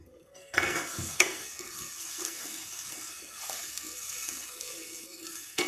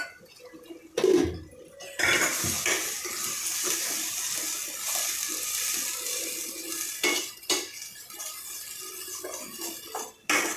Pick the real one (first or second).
second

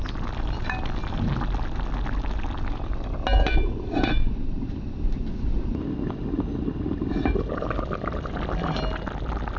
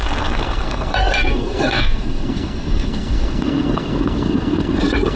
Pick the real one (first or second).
first